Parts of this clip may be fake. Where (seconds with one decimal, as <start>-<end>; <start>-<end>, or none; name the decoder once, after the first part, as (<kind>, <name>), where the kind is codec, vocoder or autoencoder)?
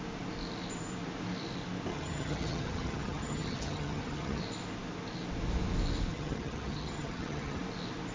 1.9-4.4 (vocoder, HiFi-GAN); 6.1-7.6